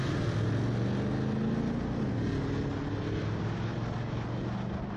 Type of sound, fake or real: real